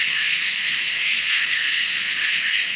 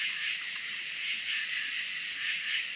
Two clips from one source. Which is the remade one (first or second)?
first